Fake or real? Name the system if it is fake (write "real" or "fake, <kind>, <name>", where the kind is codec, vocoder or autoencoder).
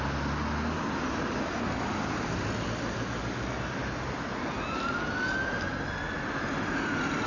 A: real